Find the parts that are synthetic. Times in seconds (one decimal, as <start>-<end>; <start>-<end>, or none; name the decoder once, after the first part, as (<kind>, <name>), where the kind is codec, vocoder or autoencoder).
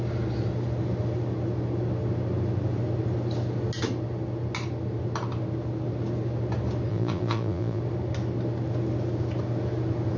6.9-7.8 (vocoder, Vocos)